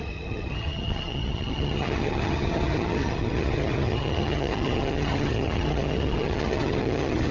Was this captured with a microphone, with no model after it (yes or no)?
no